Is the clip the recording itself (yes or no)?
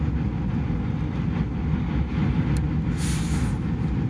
yes